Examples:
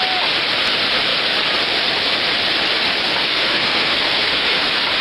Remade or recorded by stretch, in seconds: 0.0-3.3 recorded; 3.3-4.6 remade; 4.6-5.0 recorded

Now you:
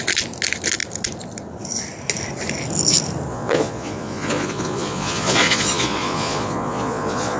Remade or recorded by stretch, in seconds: 0.0-3.3 recorded; 3.3-7.4 remade

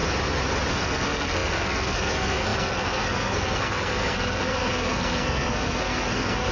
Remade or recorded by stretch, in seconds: 0.0-0.7 recorded; 0.7-6.5 remade

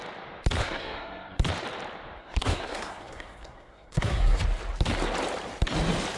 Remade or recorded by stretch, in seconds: 0.0-0.6 recorded; 0.6-1.4 remade; 1.4-2.2 recorded; 2.2-4.4 remade; 4.4-6.2 recorded

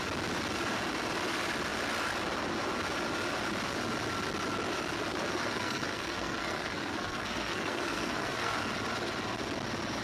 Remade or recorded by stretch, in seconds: 0.0-5.1 recorded; 5.1-8.6 remade; 8.6-10.0 recorded

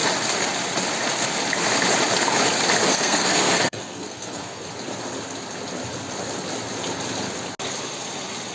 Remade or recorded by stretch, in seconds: 0.0-2.9 recorded; 2.9-4.7 remade; 4.7-8.5 recorded